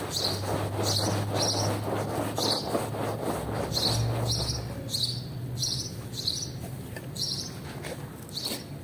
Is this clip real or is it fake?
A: real